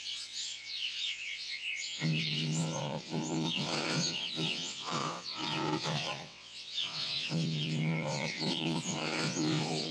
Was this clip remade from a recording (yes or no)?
yes